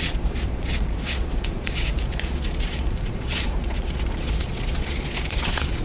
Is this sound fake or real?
fake